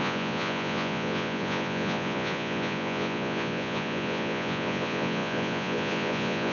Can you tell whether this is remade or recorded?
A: remade